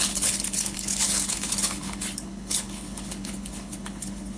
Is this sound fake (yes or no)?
yes